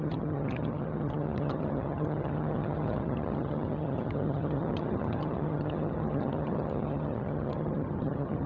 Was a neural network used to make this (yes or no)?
yes